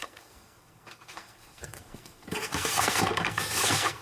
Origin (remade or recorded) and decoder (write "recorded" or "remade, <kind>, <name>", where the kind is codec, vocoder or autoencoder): remade, codec, SNAC